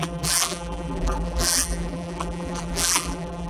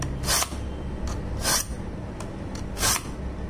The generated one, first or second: first